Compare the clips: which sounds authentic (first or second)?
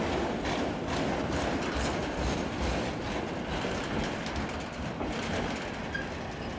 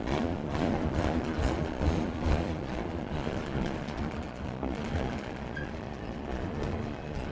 first